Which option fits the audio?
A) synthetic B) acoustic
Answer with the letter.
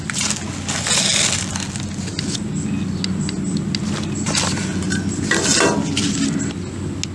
B